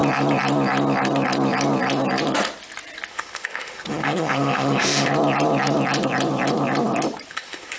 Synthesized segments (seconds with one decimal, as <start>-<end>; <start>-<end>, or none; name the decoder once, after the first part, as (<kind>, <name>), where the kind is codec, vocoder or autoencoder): 3.1-5.1 (autoencoder, DAC-VAE); 7.3-7.8